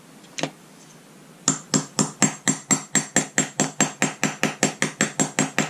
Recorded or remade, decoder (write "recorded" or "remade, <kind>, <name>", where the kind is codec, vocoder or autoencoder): recorded